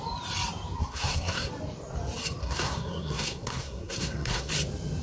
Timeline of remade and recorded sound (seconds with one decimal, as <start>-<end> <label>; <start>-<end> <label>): 0.0-0.8 recorded; 0.8-1.5 remade; 1.5-2.4 recorded; 2.4-4.5 remade; 4.5-5.0 recorded